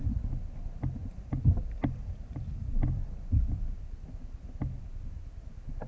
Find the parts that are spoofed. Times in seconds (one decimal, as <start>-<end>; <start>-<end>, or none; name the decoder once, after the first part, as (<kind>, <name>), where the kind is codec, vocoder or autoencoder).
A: 1.0-3.6 (vocoder, BigVGAN v2)